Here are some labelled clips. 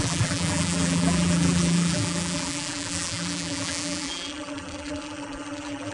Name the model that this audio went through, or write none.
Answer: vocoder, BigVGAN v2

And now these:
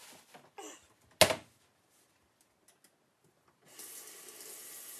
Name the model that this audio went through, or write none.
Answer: none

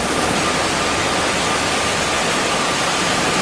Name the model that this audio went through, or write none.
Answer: none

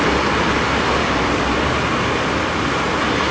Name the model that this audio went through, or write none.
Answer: none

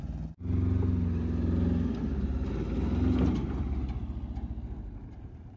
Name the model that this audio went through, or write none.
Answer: none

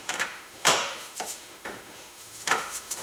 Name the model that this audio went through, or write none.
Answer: autoencoder, DAC-VAE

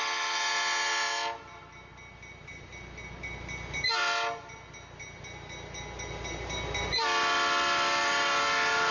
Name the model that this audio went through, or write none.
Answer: none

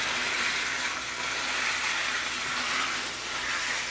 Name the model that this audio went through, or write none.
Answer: none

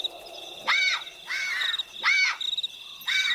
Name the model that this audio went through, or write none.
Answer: none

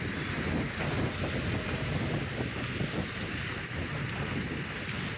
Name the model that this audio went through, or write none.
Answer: none